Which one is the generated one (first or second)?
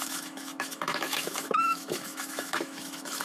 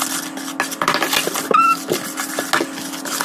first